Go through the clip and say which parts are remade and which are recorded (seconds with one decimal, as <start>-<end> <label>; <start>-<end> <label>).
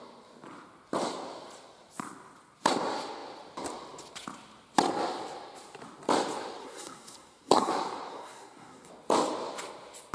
0.0-6.6 recorded; 6.6-7.7 remade; 7.7-8.1 recorded; 8.1-8.9 remade; 8.9-10.1 recorded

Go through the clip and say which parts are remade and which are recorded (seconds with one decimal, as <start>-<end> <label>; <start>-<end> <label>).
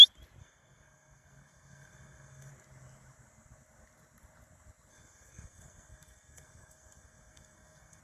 0.0-0.4 recorded; 0.4-2.5 remade; 2.5-4.9 recorded; 4.9-8.0 remade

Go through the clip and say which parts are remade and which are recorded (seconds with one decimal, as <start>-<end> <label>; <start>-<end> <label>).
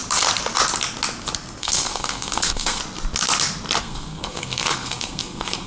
0.0-1.6 recorded; 1.6-2.8 remade; 2.8-3.8 recorded; 3.8-5.7 remade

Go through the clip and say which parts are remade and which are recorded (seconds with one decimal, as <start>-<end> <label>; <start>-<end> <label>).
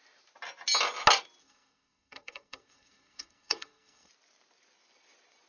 0.0-1.4 recorded; 1.4-4.1 remade; 4.1-5.5 recorded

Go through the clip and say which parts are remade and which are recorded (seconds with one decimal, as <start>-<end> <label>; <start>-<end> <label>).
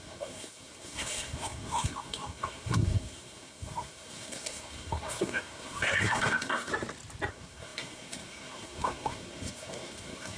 0.0-6.7 remade; 6.7-7.3 recorded; 7.3-10.4 remade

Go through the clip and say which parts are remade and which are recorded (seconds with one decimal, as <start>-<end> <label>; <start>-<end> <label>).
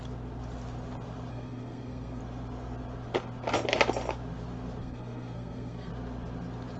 0.0-1.3 recorded; 1.3-2.2 remade; 2.2-4.8 recorded; 4.8-5.9 remade; 5.9-6.8 recorded